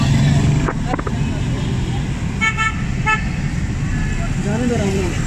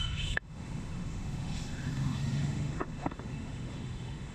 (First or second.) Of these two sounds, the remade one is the second